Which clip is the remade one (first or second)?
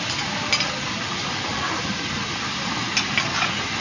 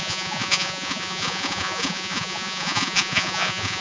second